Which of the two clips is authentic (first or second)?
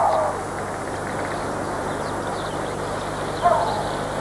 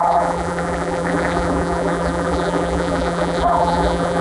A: first